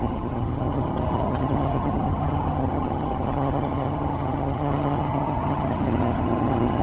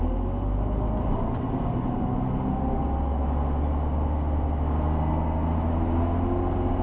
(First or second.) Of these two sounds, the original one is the second